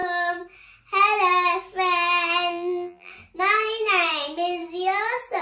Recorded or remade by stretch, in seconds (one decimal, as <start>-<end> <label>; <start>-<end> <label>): 0.0-2.5 recorded; 2.5-3.1 remade; 3.1-5.4 recorded